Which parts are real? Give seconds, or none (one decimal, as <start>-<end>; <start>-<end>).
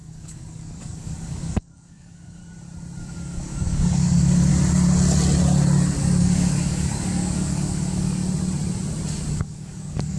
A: 2.4-3.0; 4.5-6.0; 8.2-9.3